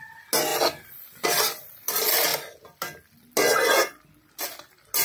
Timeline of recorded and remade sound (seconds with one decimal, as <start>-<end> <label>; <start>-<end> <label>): 0.0-5.0 recorded

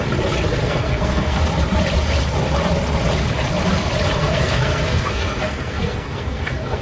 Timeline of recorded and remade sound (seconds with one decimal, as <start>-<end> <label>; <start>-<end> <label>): 0.0-0.6 recorded; 0.6-1.4 remade; 1.4-4.2 recorded; 4.2-6.8 remade

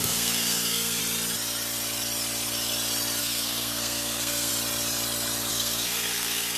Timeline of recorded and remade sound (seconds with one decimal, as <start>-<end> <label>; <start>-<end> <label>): 0.0-1.0 remade; 1.0-3.2 recorded; 3.2-4.5 remade; 4.5-5.5 recorded; 5.5-6.6 remade

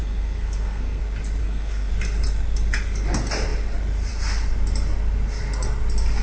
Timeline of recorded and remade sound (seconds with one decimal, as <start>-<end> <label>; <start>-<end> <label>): 0.0-1.0 remade; 1.0-1.4 recorded; 1.4-1.9 remade; 1.9-6.2 recorded

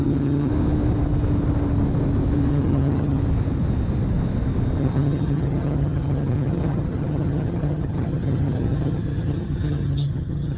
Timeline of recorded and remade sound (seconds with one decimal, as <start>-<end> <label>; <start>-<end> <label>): 0.0-0.5 remade; 0.5-2.5 recorded; 2.5-3.2 remade; 3.2-4.8 recorded; 4.8-10.6 remade